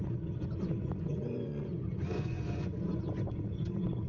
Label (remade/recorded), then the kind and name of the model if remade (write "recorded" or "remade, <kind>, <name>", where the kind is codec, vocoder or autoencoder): remade, vocoder, Vocos